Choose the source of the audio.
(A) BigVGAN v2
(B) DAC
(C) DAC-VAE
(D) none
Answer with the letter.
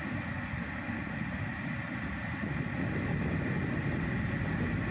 D